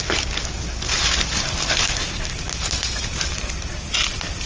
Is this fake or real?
real